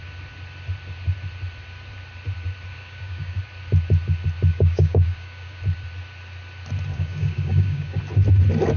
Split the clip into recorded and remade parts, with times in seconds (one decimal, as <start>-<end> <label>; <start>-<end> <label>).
0.0-2.7 recorded; 2.7-3.4 remade; 3.4-4.5 recorded; 4.5-5.6 remade; 5.6-6.9 recorded; 6.9-8.0 remade; 8.0-8.8 recorded